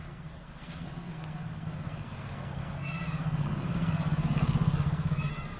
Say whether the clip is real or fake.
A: fake